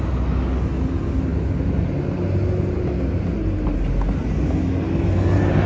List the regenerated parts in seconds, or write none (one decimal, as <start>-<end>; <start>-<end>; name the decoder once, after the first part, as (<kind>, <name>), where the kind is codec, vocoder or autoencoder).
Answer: none